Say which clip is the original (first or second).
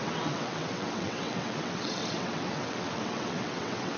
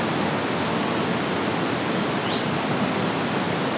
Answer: second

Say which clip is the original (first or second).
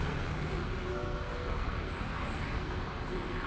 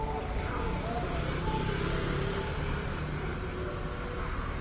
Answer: second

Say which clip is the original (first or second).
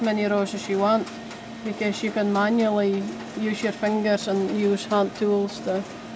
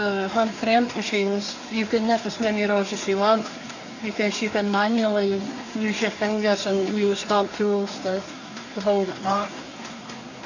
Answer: first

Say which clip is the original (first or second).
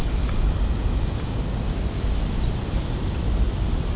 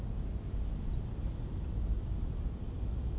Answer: second